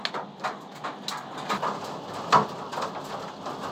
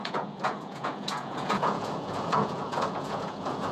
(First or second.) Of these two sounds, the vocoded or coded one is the second